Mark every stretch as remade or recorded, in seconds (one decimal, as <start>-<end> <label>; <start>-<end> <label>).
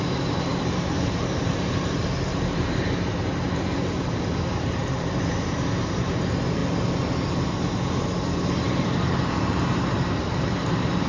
0.0-6.6 remade; 6.6-9.7 recorded; 9.7-11.1 remade